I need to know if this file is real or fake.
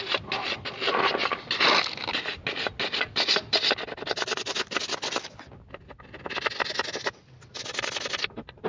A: real